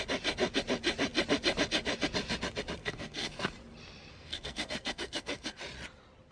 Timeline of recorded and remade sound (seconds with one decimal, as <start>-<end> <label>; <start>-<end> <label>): 0.0-2.8 recorded; 2.8-3.6 remade; 3.6-4.1 recorded; 4.1-5.6 remade; 5.6-6.3 recorded